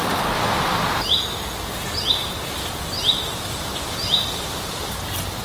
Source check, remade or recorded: recorded